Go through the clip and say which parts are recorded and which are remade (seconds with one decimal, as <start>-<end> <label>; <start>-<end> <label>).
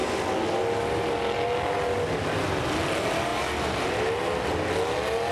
0.0-5.3 recorded